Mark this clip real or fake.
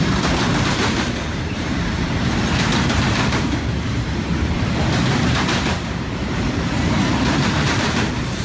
fake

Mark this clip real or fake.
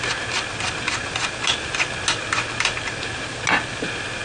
real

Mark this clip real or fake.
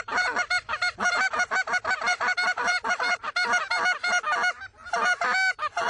real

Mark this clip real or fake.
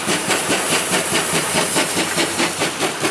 fake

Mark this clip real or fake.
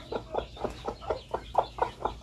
real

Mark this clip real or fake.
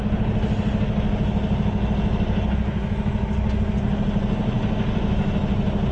real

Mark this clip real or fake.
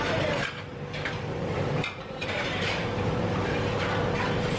fake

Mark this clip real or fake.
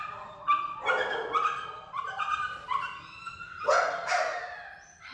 real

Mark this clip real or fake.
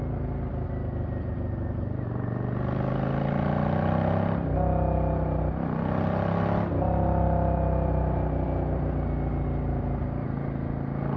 real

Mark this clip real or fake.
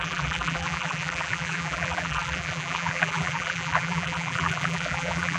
fake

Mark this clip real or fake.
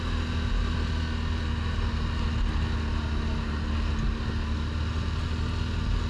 real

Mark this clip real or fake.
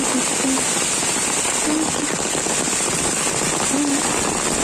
real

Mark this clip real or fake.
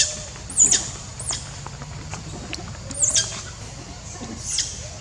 fake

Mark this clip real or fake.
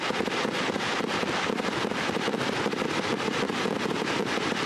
real